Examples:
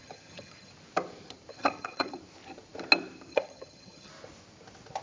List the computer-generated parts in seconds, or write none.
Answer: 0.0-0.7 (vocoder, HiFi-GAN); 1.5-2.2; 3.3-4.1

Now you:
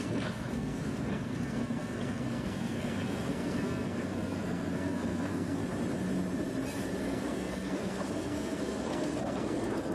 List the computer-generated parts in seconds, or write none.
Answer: 0.0-5.6 (codec, SNAC); 7.0-9.9

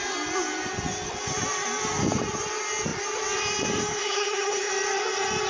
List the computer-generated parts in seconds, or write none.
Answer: 3.9-4.7 (codec, HILCodec)

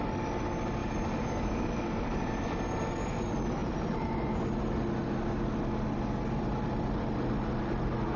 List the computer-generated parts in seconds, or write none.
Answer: 0.8-2.3 (vocoder, BigVGAN v2); 3.6-4.3

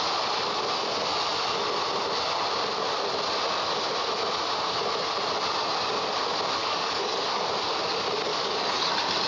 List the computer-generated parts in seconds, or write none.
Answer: 6.6-7.5 (codec, DAC); 8.3-8.9

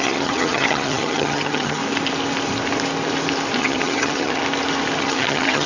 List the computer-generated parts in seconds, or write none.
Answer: 0.0-1.8 (vocoder, HiFi-GAN); 3.6-4.4; 5.0-5.7

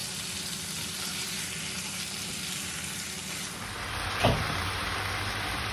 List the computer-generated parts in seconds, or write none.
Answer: none